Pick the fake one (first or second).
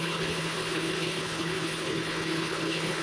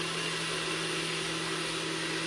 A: first